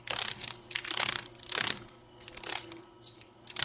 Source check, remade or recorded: recorded